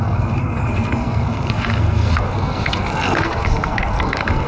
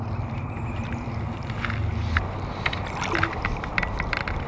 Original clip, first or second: second